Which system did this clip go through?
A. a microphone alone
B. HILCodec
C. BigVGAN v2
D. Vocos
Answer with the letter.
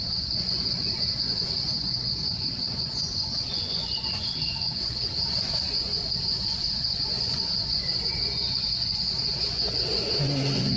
D